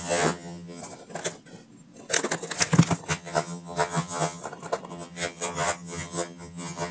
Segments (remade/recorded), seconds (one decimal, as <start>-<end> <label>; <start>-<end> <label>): 0.0-0.8 remade; 0.8-3.1 recorded; 3.1-4.4 remade; 4.4-4.9 recorded; 4.9-6.9 remade